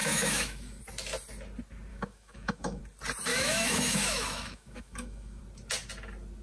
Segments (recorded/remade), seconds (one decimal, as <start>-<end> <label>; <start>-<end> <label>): 0.0-0.8 remade; 0.8-1.9 recorded; 1.9-2.8 remade; 2.8-3.3 recorded; 3.3-5.4 remade; 5.4-6.4 recorded